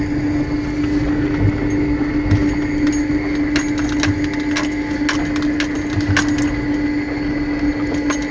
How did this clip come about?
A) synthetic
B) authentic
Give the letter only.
B